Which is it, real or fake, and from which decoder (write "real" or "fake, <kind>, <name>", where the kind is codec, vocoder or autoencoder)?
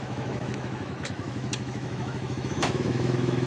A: fake, autoencoder, DAC-VAE